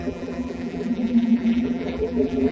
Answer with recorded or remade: remade